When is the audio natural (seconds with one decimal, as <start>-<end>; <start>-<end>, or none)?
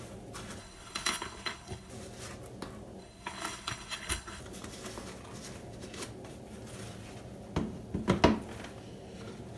0.0-0.6; 1.9-3.0; 4.4-9.6